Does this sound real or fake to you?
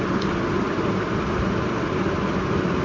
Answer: real